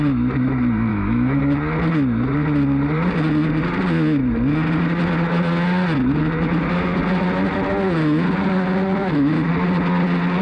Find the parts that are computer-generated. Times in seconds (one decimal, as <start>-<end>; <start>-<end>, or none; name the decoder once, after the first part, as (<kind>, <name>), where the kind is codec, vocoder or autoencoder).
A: 0.9-1.4 (autoencoder, DAC-VAE); 9.0-9.5

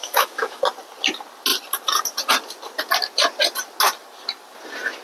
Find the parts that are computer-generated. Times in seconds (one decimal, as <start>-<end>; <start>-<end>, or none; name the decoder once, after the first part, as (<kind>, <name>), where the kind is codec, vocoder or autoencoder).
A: 0.0-0.6 (autoencoder, DAC-VAE)

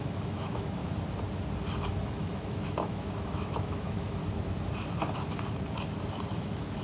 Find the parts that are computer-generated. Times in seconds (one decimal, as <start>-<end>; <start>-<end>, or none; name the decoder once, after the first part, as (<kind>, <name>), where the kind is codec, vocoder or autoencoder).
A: 0.0-0.8 (autoencoder, DAC-VAE); 2.0-4.2; 6.3-6.8

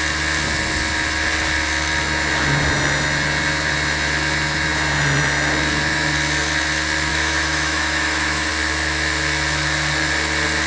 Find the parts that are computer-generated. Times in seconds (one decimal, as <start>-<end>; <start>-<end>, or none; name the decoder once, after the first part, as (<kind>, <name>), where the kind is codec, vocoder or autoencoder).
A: 7.1-8.5 (autoencoder, DAC-VAE)

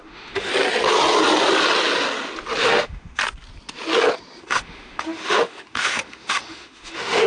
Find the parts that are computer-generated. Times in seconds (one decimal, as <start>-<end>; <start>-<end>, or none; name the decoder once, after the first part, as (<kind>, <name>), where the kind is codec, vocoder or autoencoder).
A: 0.0-0.5 (autoencoder, DAC-VAE); 2.6-3.2; 4.4-7.3